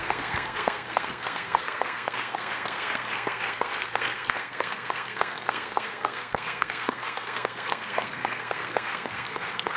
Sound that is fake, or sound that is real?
fake